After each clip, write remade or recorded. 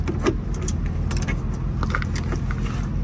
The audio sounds recorded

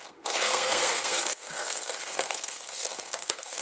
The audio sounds remade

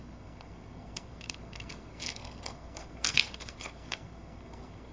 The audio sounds remade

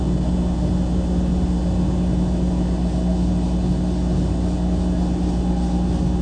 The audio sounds recorded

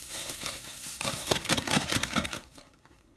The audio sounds remade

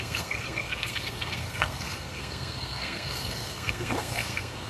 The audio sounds remade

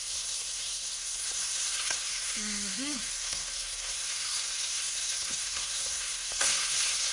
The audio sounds remade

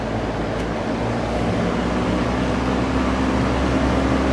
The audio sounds recorded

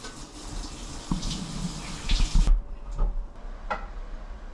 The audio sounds recorded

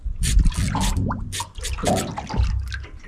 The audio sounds recorded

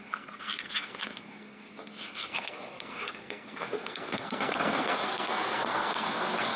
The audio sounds remade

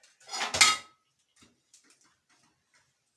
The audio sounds recorded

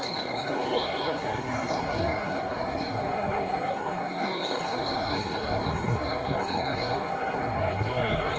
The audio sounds remade